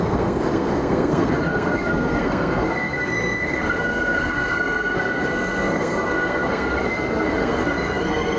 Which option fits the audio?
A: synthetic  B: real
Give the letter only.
A